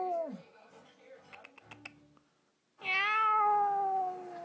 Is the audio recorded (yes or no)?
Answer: yes